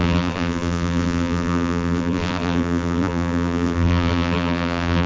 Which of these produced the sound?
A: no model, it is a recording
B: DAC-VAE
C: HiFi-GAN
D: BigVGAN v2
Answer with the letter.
D